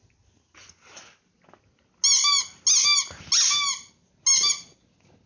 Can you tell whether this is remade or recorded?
recorded